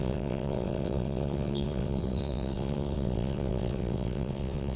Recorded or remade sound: remade